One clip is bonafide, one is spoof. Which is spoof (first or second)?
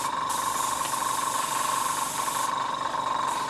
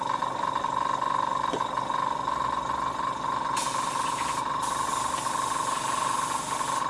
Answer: first